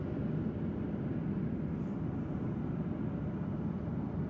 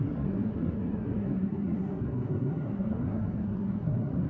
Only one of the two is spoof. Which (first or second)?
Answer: second